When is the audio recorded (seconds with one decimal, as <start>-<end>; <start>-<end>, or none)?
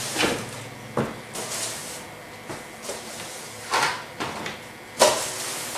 0.0-5.8